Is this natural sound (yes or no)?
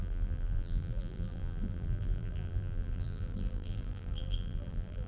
no